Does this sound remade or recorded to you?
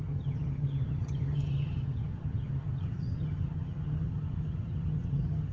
remade